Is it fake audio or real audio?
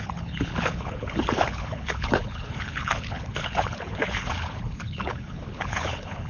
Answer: fake